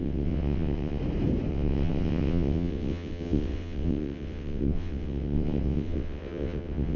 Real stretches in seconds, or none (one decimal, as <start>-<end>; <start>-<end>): 1.0-1.5